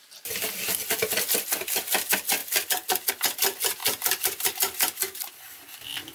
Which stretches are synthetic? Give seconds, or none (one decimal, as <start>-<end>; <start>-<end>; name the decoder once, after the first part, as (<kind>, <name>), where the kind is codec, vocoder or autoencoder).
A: none